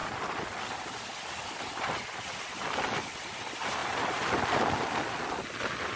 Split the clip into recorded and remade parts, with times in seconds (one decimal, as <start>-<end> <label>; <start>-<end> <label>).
0.0-6.0 recorded